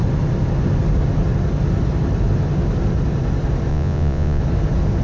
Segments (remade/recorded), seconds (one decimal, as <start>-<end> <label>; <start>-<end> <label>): 0.0-3.7 recorded; 3.7-4.4 remade; 4.4-5.0 recorded